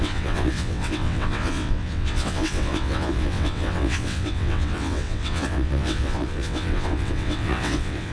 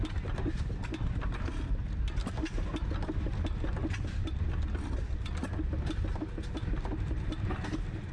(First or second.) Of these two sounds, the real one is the second